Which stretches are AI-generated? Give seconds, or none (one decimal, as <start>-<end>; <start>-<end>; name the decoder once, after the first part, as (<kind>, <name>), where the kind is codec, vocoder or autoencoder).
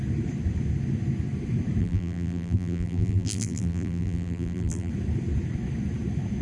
1.8-4.9 (vocoder, BigVGAN v2)